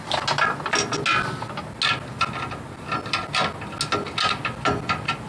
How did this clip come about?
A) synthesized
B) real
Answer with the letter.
B